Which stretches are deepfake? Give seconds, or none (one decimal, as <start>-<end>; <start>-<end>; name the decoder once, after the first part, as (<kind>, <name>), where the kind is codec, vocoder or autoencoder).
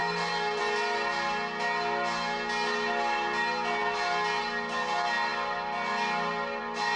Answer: none